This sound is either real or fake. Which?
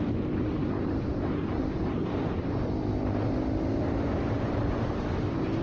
real